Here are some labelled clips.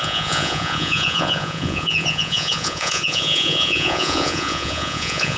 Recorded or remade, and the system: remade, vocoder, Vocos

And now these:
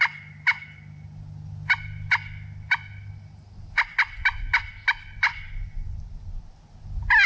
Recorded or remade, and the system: recorded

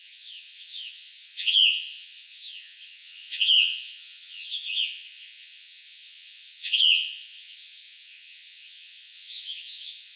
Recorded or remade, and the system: remade, vocoder, Vocos